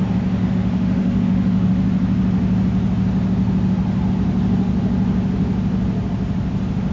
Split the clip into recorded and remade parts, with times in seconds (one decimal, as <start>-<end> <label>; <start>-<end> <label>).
0.0-0.4 recorded; 0.4-1.7 remade; 1.7-6.9 recorded